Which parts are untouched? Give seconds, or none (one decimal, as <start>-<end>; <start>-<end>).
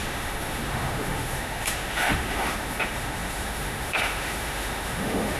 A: none